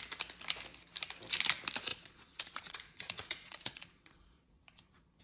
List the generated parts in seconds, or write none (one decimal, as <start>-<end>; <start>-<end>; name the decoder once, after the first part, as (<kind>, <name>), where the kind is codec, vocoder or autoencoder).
1.9-5.2 (vocoder, Vocos)

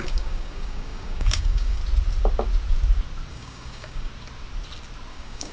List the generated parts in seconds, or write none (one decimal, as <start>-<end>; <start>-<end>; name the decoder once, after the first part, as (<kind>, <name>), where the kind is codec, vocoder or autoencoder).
0.0-1.8 (codec, DAC); 3.3-4.1; 5.1-5.5